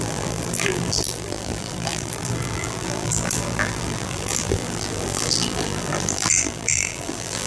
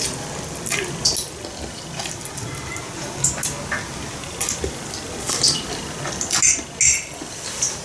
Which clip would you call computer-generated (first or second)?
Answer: first